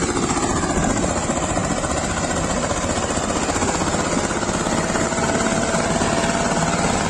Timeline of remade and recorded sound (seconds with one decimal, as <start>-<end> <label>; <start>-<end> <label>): 0.0-7.1 recorded